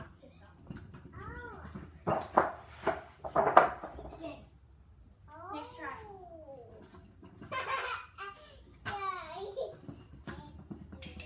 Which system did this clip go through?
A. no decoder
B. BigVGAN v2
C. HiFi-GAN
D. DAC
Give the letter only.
A